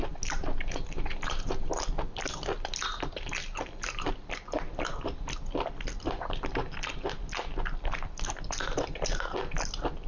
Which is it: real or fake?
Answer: real